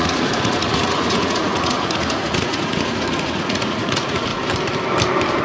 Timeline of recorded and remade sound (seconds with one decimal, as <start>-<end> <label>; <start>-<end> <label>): 0.0-4.3 remade; 4.3-5.4 recorded